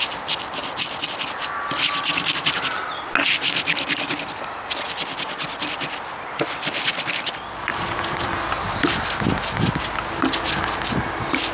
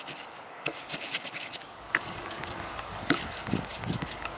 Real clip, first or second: first